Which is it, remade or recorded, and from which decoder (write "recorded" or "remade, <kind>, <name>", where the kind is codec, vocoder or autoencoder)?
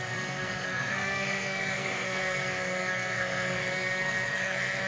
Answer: remade, codec, SNAC